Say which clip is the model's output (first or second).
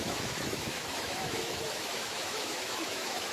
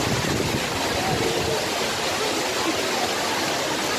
first